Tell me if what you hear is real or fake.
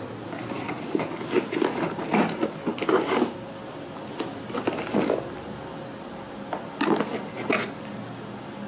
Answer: real